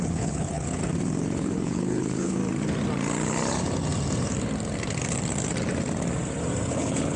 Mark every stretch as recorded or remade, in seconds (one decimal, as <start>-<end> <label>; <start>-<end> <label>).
0.0-0.8 remade; 0.8-1.4 recorded; 1.4-2.4 remade; 2.4-6.7 recorded; 6.7-7.2 remade